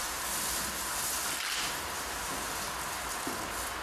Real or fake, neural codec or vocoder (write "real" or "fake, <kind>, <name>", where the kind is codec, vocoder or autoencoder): real